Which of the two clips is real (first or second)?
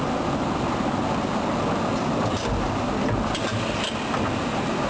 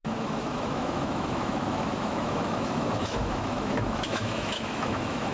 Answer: first